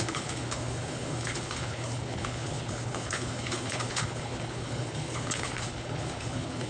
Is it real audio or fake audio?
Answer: fake